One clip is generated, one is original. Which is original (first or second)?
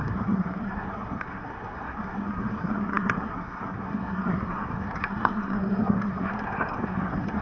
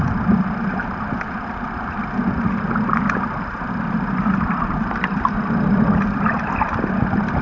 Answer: second